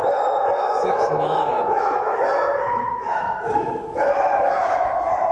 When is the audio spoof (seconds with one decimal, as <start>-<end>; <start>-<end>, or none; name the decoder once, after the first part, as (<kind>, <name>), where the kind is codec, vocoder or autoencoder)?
0.0-5.3 (autoencoder, DAC-VAE)

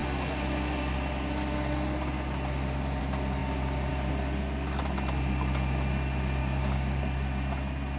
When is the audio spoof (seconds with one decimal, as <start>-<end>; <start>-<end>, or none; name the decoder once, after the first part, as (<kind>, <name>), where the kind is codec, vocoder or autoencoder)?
6.4-7.0 (codec, DAC)

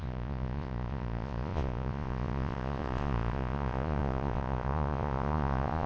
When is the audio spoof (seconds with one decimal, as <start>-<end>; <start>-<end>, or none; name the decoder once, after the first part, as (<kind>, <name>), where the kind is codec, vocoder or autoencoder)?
0.0-5.9 (vocoder, Vocos)

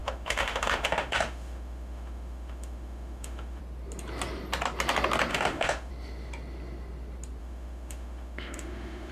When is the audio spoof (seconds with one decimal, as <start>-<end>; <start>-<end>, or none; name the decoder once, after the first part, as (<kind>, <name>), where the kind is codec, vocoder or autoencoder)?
0.0-3.6 (autoencoder, DAC-VAE); 5.3-5.9; 7.4-9.1

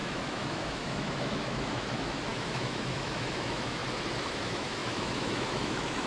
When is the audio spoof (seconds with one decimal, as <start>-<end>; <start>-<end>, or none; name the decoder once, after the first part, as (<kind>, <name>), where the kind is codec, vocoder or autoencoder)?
0.0-3.8 (autoencoder, DAC-VAE); 4.3-6.1

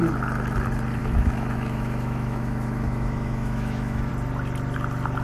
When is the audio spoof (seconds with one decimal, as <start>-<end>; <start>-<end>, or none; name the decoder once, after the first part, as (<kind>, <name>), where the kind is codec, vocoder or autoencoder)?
1.0-4.1 (autoencoder, DAC-VAE)